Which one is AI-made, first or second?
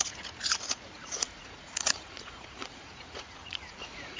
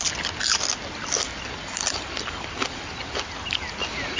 first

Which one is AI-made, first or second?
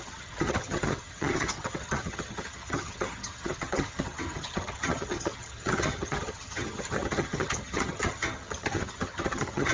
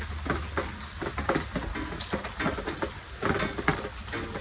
first